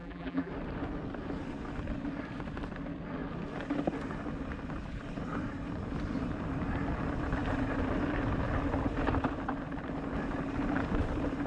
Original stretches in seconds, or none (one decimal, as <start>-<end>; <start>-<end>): 0.5-11.5